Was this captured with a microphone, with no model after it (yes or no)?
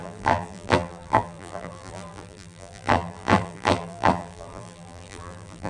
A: no